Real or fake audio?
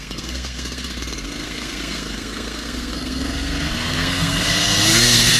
fake